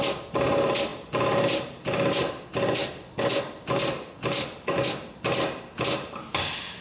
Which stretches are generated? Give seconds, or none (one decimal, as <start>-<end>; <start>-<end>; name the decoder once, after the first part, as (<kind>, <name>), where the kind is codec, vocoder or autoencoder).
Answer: none